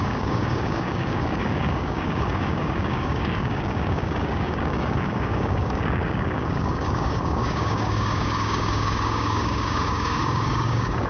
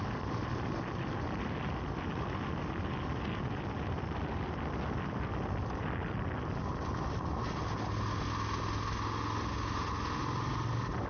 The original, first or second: second